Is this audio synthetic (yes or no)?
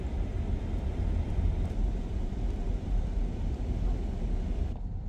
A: no